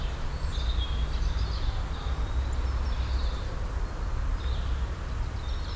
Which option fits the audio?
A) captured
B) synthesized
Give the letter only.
A